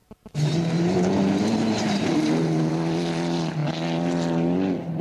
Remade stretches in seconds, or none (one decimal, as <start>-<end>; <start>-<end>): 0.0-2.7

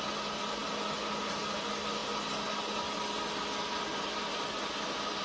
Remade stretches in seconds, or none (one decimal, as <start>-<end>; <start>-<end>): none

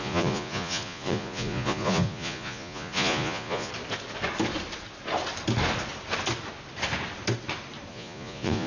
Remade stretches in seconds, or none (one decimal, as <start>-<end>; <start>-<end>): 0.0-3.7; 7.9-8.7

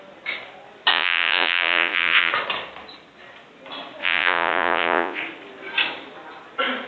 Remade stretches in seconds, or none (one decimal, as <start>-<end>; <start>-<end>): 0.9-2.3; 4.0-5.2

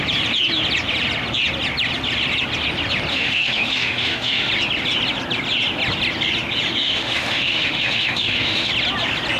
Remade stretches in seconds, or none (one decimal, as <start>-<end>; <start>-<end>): 3.1-4.5; 6.8-8.7

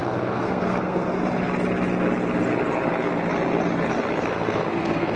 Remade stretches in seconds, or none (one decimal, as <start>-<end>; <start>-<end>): 0.0-1.1; 4.2-5.2

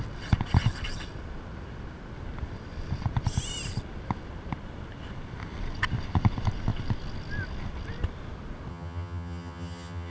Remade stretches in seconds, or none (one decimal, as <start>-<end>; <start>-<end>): 8.7-10.1